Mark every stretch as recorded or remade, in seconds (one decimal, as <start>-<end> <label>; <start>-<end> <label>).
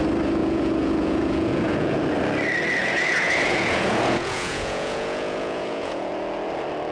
0.0-0.4 recorded; 0.4-2.0 remade; 2.0-2.8 recorded; 2.8-6.1 remade; 6.1-6.9 recorded